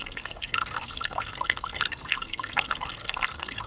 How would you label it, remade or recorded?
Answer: remade